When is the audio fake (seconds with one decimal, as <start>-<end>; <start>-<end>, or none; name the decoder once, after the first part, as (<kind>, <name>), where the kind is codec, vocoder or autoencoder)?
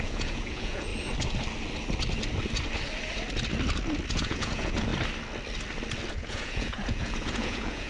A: 0.0-0.9 (vocoder, Vocos); 4.1-4.9; 6.1-7.9